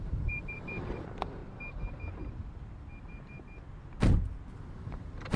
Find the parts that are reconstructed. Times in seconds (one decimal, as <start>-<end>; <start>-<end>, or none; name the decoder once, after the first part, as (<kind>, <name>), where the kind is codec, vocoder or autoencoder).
0.0-1.4 (vocoder, BigVGAN v2); 4.6-5.4